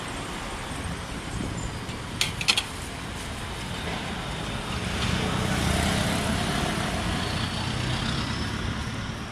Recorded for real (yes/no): yes